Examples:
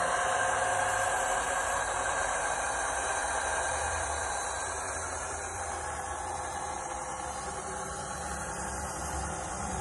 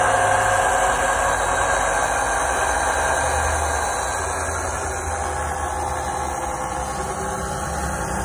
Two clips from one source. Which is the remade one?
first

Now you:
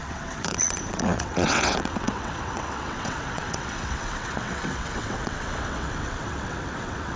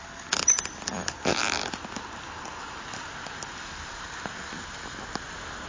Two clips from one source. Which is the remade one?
first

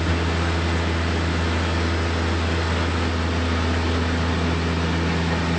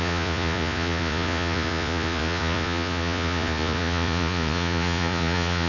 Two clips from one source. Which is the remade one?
second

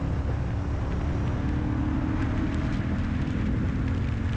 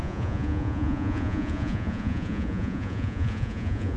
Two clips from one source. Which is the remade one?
second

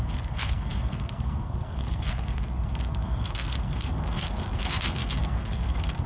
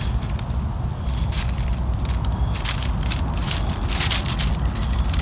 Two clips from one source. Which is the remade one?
first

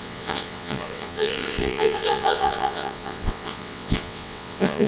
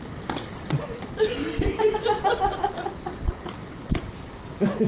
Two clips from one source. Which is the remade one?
first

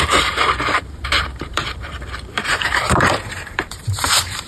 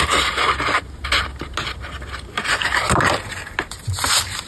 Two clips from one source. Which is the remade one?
first